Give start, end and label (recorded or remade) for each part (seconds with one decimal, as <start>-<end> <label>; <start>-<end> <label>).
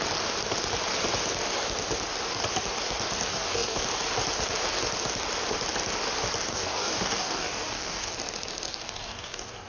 0.0-3.3 recorded; 3.3-3.8 remade; 3.8-6.5 recorded; 6.5-8.1 remade; 8.1-8.7 recorded; 8.7-9.7 remade